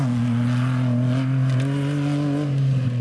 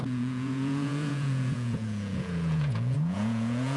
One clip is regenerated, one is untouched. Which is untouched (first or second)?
first